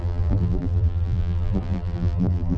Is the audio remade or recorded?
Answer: remade